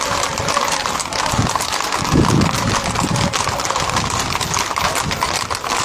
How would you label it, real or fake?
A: real